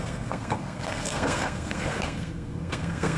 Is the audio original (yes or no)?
no